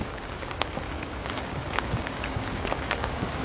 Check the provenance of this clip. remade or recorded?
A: remade